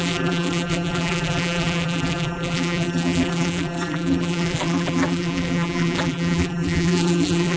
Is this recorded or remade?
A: remade